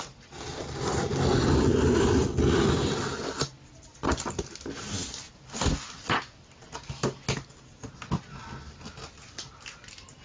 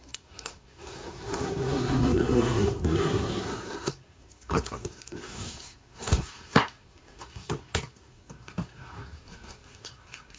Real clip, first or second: first